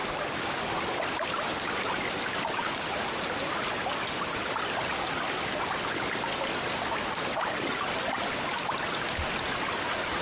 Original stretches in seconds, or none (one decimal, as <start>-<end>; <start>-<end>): 0.0-10.2